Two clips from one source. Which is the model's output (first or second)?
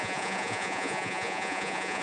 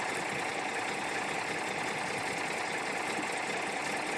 first